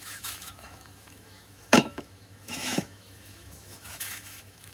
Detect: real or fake fake